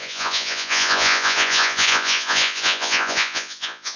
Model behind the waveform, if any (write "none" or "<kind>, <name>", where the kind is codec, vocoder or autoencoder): vocoder, Vocos